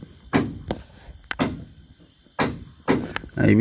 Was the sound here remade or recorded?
recorded